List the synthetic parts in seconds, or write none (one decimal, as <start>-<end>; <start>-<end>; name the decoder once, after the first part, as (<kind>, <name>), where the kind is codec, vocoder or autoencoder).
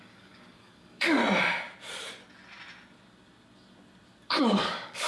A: 0.0-1.2 (codec, DAC); 4.3-5.1